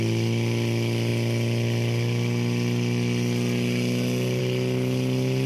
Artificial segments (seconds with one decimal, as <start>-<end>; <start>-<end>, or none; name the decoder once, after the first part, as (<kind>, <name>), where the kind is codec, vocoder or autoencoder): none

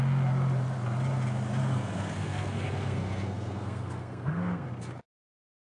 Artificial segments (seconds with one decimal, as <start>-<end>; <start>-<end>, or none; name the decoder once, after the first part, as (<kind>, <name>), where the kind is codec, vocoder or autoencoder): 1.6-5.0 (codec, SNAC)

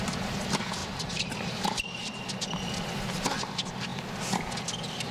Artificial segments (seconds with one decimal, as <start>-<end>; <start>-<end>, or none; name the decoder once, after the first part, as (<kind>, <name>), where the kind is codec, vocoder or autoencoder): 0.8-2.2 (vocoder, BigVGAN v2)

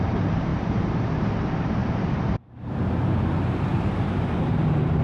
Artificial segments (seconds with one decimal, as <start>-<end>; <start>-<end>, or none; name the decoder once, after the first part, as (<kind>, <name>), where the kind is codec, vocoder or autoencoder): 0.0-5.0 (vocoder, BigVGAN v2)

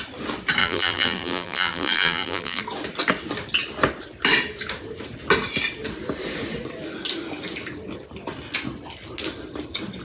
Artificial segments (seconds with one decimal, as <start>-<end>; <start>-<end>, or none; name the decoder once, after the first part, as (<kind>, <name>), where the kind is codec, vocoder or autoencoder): 0.6-2.6 (vocoder, BigVGAN v2)

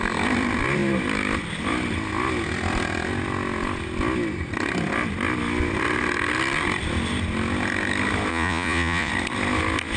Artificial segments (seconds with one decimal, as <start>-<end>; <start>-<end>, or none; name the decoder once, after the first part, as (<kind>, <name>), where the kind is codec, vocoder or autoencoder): 8.3-9.1 (vocoder, Vocos)